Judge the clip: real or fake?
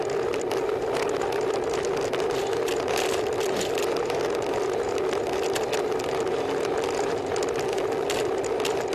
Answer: real